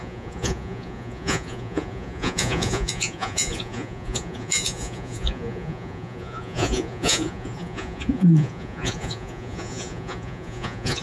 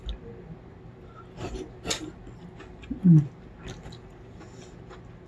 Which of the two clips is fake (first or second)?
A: first